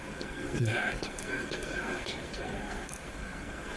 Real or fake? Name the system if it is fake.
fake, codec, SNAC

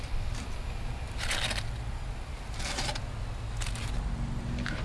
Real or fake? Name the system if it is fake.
real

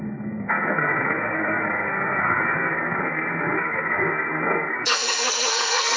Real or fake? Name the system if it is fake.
fake, codec, SNAC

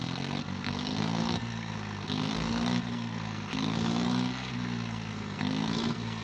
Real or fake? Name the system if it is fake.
fake, codec, SNAC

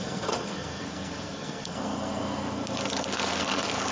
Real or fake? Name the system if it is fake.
fake, codec, SNAC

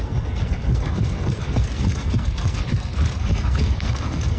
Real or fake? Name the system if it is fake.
fake, codec, SNAC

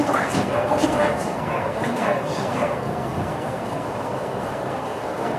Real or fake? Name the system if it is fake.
fake, codec, SNAC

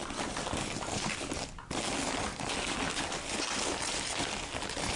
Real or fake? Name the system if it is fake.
real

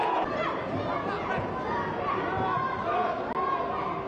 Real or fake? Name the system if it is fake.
real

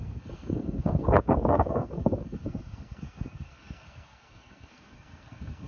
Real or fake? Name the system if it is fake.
fake, codec, SNAC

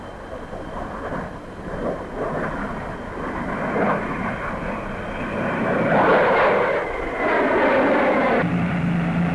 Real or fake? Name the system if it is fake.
real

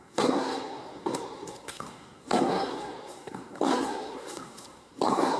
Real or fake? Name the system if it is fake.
fake, codec, SNAC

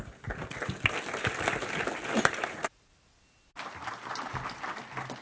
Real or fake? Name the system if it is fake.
real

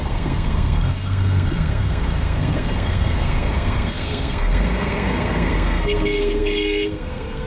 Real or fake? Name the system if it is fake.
fake, codec, SNAC